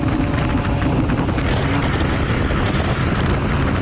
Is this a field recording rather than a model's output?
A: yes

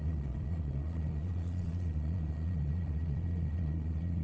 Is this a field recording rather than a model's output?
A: no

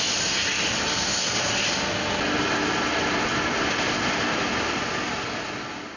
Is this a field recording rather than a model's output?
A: yes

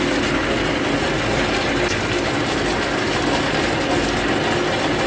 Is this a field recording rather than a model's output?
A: yes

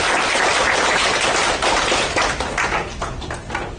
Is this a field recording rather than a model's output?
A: yes